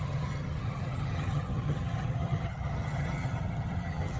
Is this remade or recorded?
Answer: remade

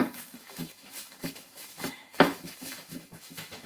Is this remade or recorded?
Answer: remade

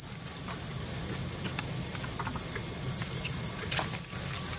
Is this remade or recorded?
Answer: recorded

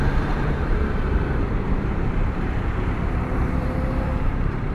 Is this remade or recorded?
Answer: remade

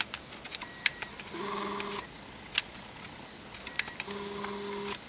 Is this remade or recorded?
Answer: recorded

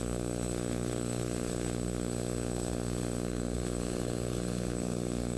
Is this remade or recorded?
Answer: remade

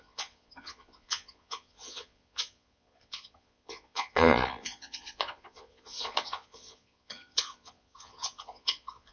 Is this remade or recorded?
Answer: remade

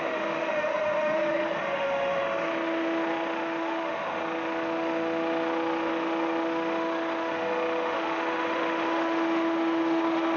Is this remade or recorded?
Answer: remade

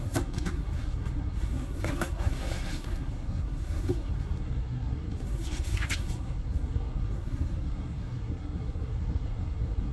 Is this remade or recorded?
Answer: remade